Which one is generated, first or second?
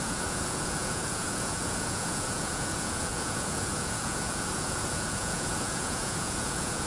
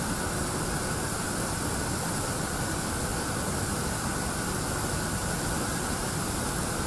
first